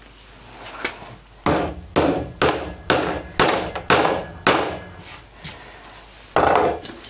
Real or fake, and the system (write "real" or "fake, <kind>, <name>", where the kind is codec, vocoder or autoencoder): real